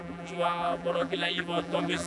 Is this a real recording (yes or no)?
no